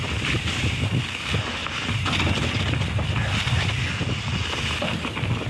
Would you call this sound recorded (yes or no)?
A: yes